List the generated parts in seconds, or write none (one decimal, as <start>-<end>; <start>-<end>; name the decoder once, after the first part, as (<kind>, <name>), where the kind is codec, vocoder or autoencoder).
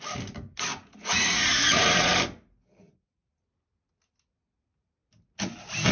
0.7-2.1 (vocoder, Vocos)